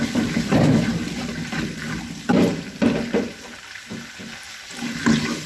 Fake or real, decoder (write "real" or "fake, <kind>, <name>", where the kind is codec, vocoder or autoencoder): fake, vocoder, BigVGAN v2